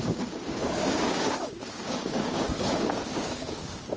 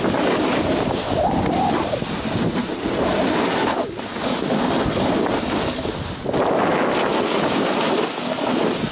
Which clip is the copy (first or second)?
first